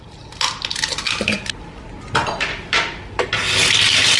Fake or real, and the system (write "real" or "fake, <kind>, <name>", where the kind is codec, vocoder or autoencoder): real